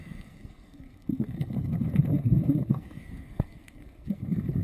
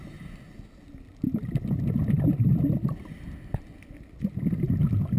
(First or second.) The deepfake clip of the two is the first